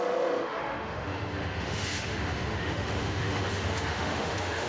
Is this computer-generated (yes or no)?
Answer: yes